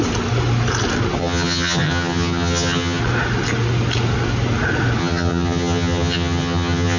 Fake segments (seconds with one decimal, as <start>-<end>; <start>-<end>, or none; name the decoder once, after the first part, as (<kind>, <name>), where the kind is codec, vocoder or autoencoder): 1.2-3.0 (vocoder, HiFi-GAN); 5.0-7.0